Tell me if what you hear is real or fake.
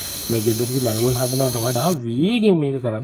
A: fake